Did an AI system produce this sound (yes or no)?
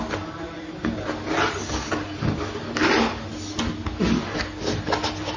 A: no